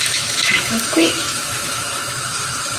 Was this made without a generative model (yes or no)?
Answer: no